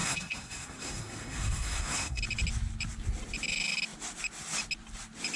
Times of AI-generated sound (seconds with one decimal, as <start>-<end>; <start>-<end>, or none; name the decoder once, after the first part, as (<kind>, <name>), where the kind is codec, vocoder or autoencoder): 0.0-2.2 (codec, SNAC)